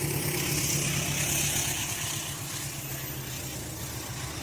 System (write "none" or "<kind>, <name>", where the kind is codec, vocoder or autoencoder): none